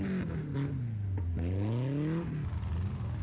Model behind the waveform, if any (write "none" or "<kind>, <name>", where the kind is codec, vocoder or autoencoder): none